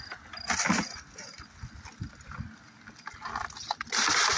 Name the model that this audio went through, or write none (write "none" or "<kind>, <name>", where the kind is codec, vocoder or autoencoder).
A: none